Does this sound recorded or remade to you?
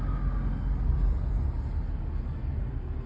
recorded